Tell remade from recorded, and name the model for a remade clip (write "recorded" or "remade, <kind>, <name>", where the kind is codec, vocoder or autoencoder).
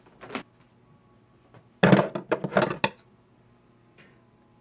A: recorded